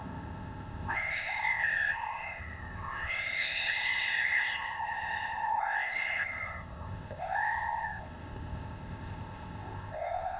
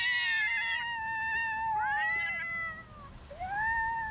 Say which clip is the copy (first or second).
first